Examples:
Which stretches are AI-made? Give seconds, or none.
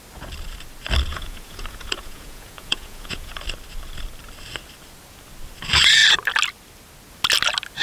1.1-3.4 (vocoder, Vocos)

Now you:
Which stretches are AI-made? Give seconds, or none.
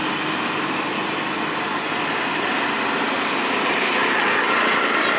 none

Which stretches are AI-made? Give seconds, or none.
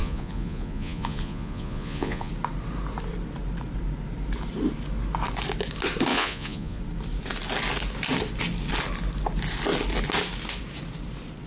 0.0-2.3 (vocoder, Vocos); 6.1-6.8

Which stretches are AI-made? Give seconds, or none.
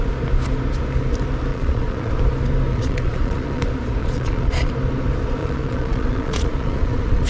1.5-2.1 (vocoder, Vocos); 2.7-3.6; 4.0-4.7; 5.4-7.3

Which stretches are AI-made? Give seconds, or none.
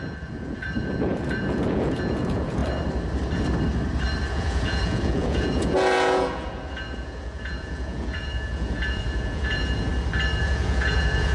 0.0-2.6 (vocoder, Vocos); 4.3-9.9; 10.4-11.3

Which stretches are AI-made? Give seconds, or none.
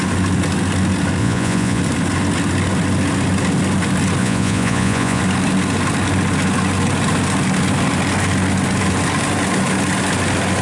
1.2-1.8 (vocoder, Vocos); 4.2-5.2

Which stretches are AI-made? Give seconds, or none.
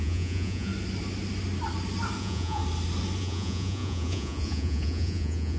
0.0-0.7 (vocoder, Vocos); 2.2-2.6; 3.2-5.6